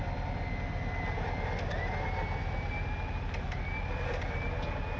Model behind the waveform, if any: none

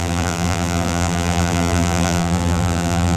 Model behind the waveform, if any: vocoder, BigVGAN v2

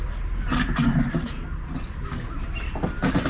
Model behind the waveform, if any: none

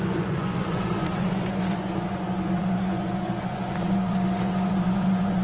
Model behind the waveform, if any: vocoder, Vocos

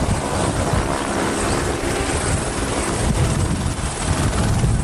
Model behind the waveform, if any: vocoder, BigVGAN v2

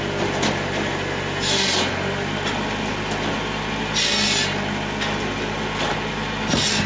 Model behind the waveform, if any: none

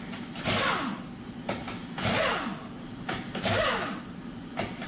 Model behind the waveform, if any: none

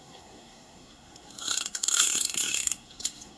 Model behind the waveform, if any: codec, SNAC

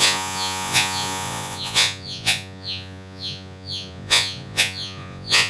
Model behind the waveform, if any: vocoder, Vocos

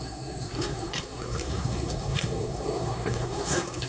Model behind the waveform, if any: codec, SNAC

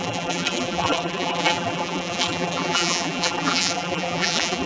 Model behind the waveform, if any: vocoder, BigVGAN v2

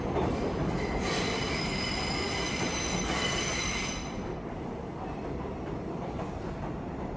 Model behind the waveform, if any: vocoder, BigVGAN v2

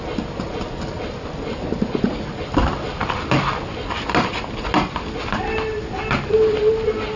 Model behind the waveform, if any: none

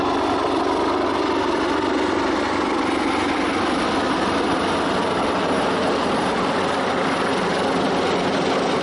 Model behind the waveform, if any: none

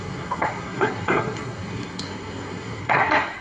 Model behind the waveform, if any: codec, SNAC